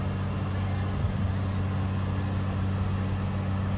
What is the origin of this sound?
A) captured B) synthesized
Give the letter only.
A